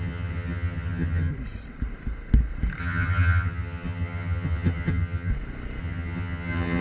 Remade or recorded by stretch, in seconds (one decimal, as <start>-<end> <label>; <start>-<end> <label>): 0.0-1.3 remade; 1.3-2.8 recorded; 2.8-5.3 remade; 5.3-5.8 recorded; 5.8-6.8 remade